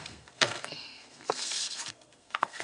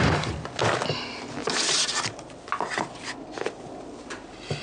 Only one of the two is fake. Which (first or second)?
first